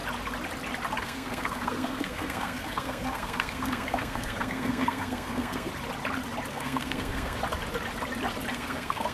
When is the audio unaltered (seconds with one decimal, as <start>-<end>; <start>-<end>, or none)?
0.0-1.0; 5.7-6.5; 7.4-8.5